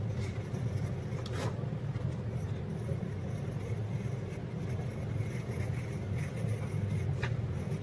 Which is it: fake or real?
real